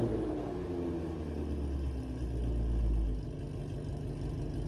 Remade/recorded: recorded